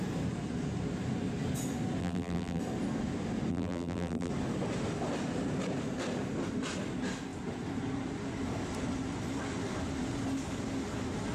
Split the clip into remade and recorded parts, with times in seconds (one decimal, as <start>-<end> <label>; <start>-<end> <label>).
0.0-2.0 recorded; 2.0-2.6 remade; 2.6-3.5 recorded; 3.5-4.3 remade; 4.3-11.3 recorded